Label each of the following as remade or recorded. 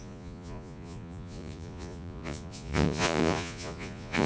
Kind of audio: remade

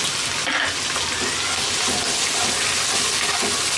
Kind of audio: recorded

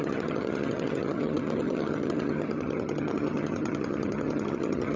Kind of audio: remade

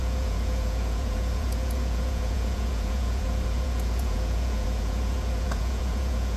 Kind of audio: remade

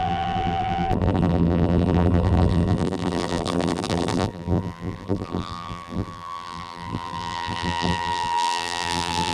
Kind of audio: remade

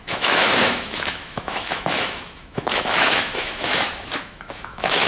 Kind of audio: remade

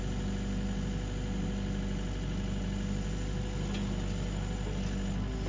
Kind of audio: recorded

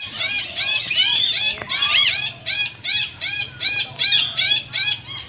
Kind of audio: remade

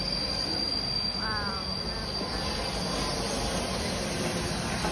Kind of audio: recorded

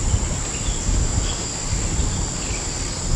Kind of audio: recorded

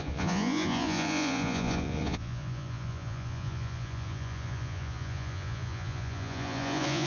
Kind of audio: remade